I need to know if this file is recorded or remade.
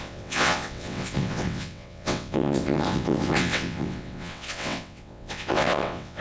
remade